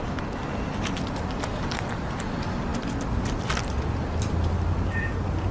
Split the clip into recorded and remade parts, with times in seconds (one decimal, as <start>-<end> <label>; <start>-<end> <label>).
0.0-5.5 recorded